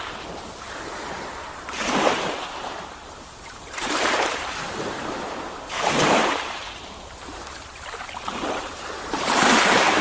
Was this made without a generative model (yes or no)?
no